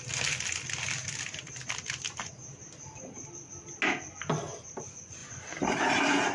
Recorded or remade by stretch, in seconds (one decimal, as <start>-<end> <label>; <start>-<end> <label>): 0.0-6.3 recorded